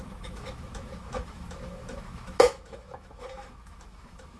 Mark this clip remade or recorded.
remade